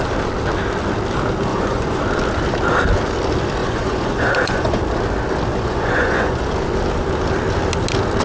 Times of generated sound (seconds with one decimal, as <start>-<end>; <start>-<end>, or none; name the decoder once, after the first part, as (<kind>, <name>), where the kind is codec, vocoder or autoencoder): 1.5-2.0 (vocoder, Vocos); 3.6-4.8; 5.5-6.4